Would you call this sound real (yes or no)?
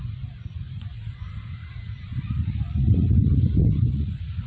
no